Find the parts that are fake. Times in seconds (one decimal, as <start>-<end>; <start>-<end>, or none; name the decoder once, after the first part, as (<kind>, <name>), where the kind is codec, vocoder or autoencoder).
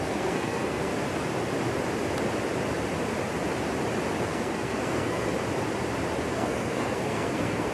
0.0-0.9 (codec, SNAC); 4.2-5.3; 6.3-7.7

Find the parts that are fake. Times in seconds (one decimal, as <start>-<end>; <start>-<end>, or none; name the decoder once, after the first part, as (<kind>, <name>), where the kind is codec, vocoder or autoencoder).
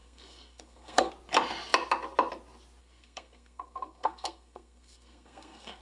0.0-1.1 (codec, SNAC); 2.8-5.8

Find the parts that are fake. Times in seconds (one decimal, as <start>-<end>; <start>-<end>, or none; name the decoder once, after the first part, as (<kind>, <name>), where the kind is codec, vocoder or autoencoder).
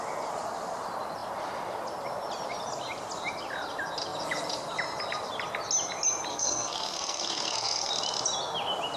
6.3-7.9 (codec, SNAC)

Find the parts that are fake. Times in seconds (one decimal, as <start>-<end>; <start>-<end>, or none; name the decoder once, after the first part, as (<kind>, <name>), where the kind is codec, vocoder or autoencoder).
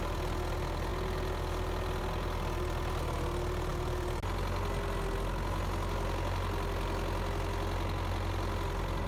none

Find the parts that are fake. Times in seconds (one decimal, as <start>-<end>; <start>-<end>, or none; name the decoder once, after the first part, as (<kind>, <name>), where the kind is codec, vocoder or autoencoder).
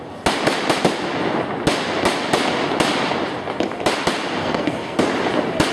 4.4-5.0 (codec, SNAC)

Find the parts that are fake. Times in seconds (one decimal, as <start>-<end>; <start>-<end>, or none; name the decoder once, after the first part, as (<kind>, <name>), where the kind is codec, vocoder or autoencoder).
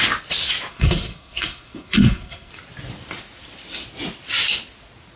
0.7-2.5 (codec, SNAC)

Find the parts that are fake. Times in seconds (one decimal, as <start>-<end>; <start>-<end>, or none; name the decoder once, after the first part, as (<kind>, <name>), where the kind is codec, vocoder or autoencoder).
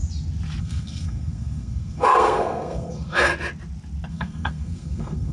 0.6-3.3 (codec, SNAC); 4.1-5.3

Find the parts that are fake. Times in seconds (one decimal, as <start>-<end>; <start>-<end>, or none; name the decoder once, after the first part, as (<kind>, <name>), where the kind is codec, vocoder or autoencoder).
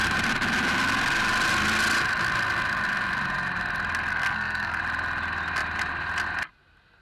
4.1-4.8 (codec, SNAC)